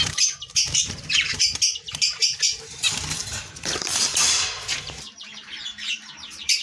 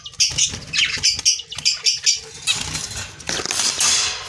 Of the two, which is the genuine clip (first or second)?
second